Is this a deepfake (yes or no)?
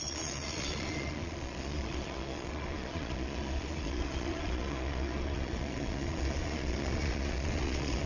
yes